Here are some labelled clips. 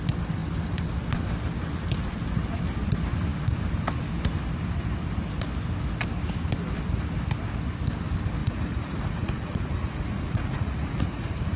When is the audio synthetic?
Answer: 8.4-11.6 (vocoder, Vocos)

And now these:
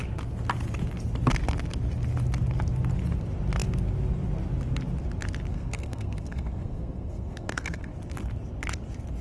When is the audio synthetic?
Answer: 5.5-7.9 (codec, SNAC)

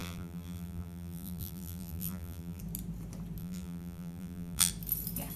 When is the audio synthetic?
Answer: 0.0-2.6 (vocoder, BigVGAN v2); 3.4-4.7